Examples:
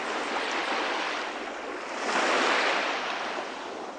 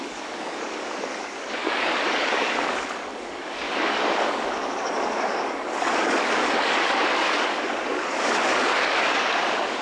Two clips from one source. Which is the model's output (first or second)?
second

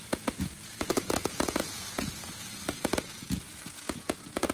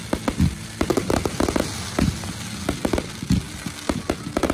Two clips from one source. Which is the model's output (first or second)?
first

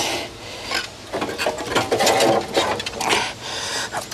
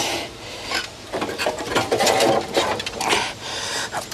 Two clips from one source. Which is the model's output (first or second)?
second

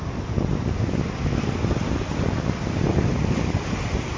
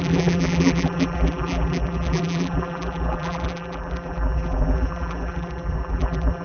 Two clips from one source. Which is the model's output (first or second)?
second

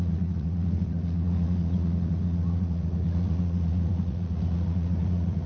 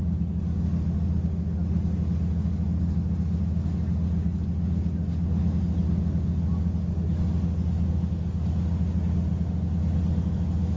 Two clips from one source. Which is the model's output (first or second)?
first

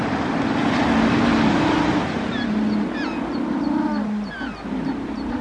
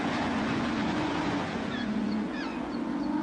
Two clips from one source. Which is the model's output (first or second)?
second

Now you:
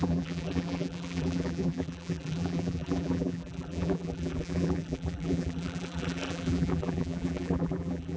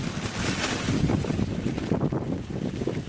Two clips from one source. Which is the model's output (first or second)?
first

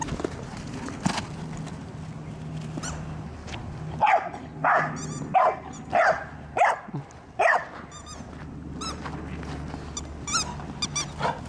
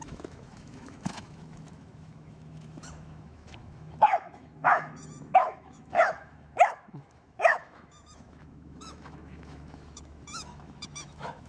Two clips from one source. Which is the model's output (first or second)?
second